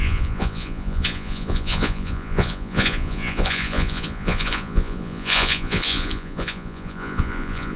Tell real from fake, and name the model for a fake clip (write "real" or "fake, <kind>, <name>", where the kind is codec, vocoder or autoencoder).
fake, vocoder, Vocos